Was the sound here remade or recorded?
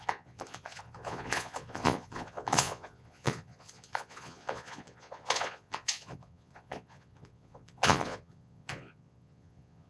remade